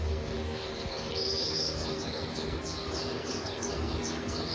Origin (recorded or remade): remade